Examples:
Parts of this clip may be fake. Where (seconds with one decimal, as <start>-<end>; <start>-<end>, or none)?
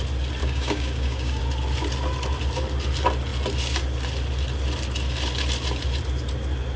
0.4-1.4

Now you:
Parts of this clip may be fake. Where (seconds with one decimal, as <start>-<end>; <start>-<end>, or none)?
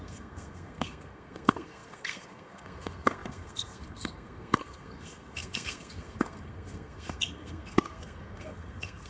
0.0-9.1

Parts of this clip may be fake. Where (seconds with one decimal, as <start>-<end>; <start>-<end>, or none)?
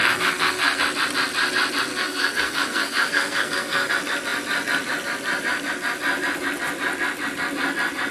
0.0-0.8; 1.9-3.9